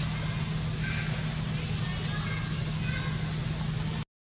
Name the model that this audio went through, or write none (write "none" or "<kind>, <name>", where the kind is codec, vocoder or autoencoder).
none